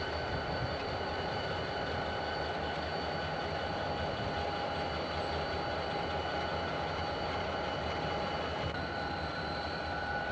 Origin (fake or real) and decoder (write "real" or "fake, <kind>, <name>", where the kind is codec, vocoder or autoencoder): real